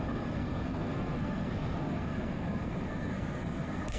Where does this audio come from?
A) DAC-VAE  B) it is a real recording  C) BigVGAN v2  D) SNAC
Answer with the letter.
D